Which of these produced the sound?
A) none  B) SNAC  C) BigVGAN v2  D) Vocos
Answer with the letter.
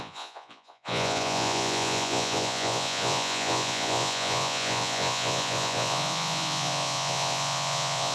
D